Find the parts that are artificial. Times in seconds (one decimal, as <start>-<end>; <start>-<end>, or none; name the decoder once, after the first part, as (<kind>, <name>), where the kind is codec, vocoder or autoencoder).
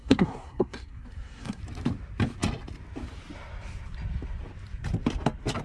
0.0-1.6 (codec, SNAC)